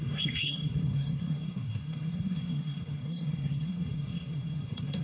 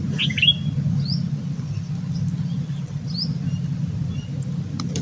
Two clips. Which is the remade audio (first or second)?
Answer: first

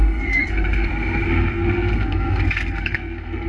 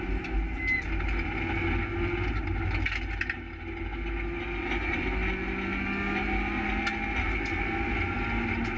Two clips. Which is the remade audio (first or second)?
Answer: first